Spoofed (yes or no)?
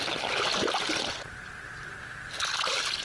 no